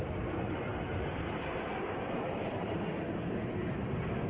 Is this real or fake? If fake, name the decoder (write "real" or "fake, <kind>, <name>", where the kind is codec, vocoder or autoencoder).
fake, vocoder, BigVGAN v2